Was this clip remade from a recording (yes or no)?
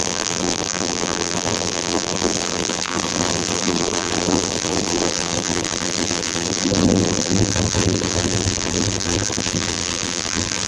yes